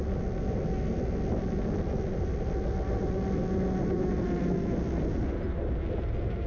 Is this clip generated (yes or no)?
no